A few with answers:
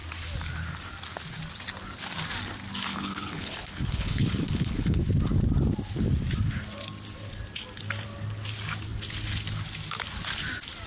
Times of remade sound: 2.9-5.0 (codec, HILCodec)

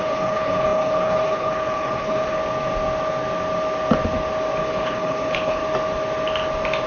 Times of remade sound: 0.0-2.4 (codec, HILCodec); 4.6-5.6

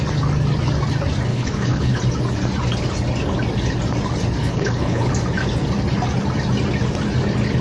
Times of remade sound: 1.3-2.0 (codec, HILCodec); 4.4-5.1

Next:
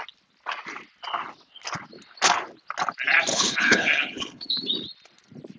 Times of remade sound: 3.3-4.6 (codec, HILCodec)

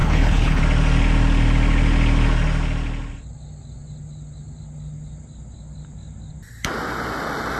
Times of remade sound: 0.0-0.6 (codec, HILCodec)

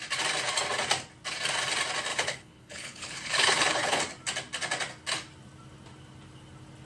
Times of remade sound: 2.1-4.0 (codec, HILCodec)